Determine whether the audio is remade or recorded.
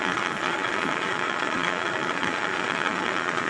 remade